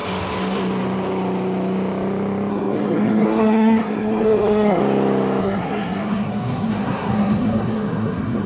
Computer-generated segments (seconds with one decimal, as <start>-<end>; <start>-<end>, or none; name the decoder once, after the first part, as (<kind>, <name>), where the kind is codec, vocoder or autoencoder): 2.5-4.8 (codec, SNAC); 5.4-8.5